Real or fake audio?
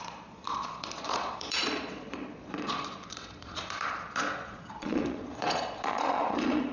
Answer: fake